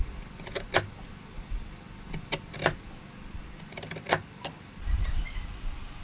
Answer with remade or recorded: recorded